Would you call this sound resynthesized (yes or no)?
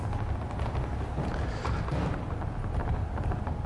no